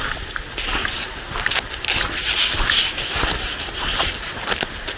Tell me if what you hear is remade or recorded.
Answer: recorded